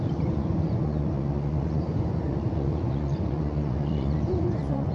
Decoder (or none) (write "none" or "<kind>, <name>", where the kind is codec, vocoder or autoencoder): vocoder, Vocos